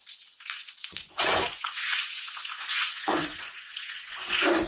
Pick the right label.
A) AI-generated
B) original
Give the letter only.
A